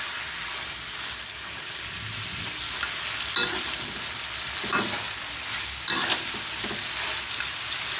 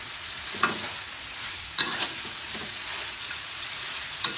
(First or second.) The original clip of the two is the first